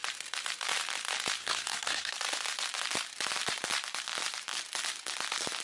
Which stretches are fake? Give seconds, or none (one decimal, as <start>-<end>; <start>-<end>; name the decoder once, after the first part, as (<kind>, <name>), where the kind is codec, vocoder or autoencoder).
1.4-2.1 (codec, SNAC)